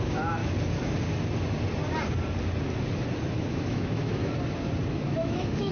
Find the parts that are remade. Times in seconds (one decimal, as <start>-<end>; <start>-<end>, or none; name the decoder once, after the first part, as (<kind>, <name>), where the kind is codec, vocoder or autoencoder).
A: 0.0-0.4 (autoencoder, DAC-VAE); 3.5-4.2; 4.9-5.7